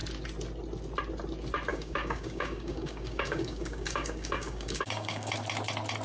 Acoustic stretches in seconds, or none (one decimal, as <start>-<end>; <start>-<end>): 0.0-1.7; 5.3-6.0